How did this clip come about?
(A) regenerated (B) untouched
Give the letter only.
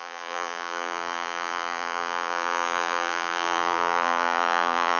A